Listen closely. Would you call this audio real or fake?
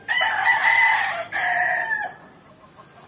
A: fake